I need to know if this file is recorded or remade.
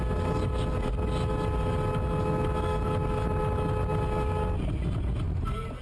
recorded